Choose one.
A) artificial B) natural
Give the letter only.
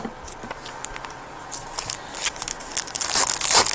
B